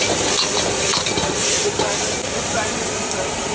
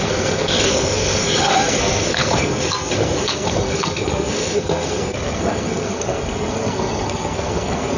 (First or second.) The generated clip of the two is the second